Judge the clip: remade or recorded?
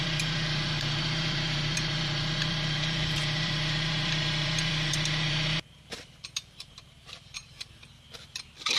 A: remade